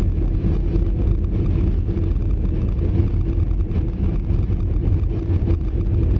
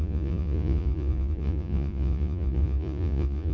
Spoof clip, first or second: second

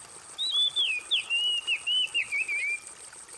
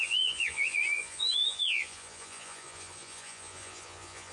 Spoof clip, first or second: second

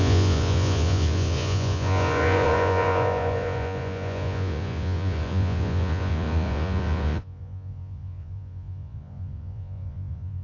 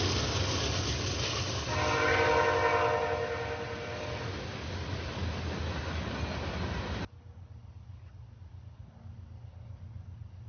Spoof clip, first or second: first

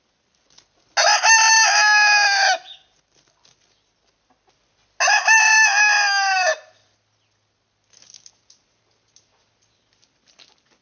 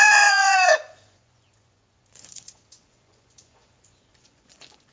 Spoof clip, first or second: second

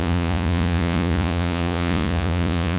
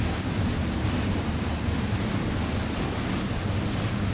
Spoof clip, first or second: first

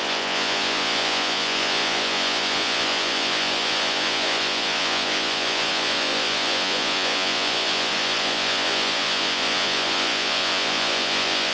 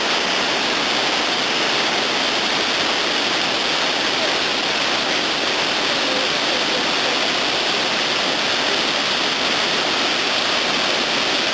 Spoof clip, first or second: first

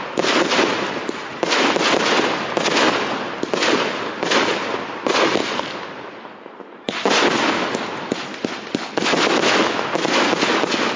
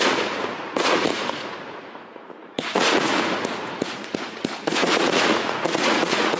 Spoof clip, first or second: second